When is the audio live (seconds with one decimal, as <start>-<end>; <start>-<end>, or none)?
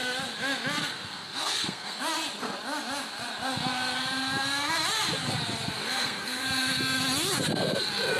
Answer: 0.0-0.8; 2.0-5.8; 6.4-8.2